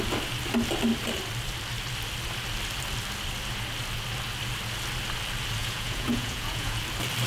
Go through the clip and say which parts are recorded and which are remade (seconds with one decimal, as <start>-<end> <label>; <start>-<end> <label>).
0.0-5.6 recorded; 5.6-6.8 remade; 6.8-7.3 recorded